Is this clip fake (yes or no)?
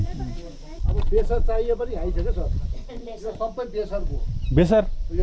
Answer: no